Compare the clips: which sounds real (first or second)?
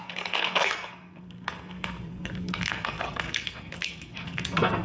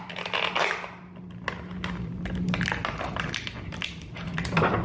second